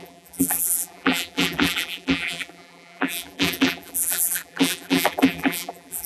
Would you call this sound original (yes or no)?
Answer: no